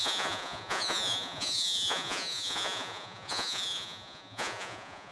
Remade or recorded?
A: remade